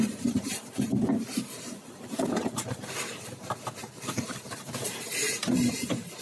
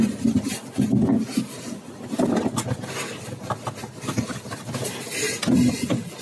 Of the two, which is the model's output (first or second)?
first